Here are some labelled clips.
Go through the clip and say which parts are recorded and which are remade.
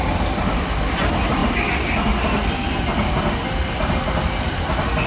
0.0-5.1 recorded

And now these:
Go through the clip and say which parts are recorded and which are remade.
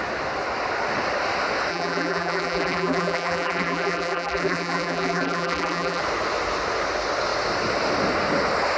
0.0-1.7 recorded; 1.7-6.0 remade; 6.0-8.8 recorded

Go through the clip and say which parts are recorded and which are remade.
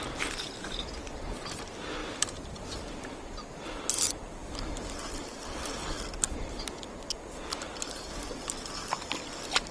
0.0-2.0 recorded; 2.0-3.2 remade; 3.2-7.5 recorded; 7.5-8.2 remade; 8.2-9.7 recorded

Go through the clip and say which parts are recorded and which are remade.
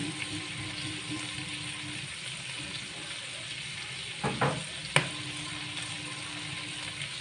0.0-7.2 recorded